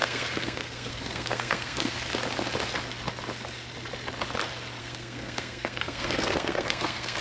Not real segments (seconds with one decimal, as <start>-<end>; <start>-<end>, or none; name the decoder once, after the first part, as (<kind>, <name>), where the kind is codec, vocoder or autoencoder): 0.0-2.1 (codec, SNAC); 4.8-7.2